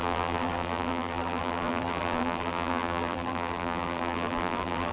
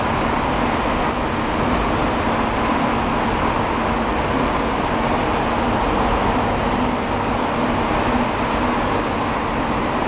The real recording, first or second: second